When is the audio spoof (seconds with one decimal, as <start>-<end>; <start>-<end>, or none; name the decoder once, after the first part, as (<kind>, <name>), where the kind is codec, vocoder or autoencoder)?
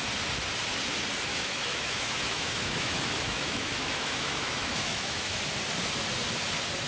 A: 1.3-5.4 (autoencoder, DAC-VAE)